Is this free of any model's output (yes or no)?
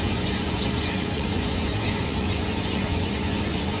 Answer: no